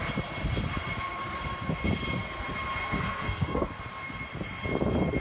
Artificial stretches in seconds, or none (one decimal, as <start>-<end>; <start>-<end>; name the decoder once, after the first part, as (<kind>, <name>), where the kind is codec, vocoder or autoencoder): 2.8-3.7 (codec, SNAC)